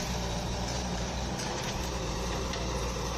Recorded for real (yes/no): no